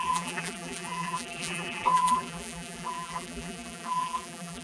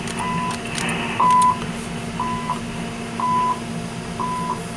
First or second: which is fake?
first